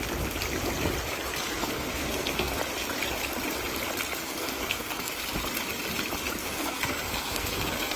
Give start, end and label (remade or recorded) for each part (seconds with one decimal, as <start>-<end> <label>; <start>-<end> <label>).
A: 0.0-1.6 recorded; 1.6-2.6 remade; 2.6-4.2 recorded; 4.2-5.1 remade; 5.1-6.4 recorded; 6.4-8.0 remade